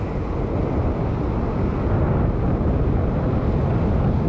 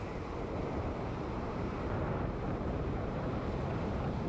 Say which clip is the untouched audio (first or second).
first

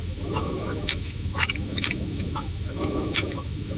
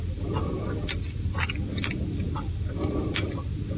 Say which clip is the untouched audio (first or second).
second